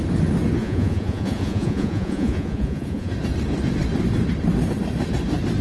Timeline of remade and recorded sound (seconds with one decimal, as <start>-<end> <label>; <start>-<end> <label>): 0.0-0.6 recorded; 0.6-3.1 remade; 3.1-5.6 recorded